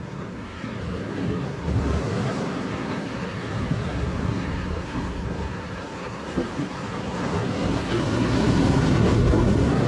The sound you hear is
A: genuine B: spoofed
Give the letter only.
B